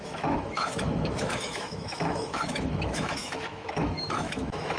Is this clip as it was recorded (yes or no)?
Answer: no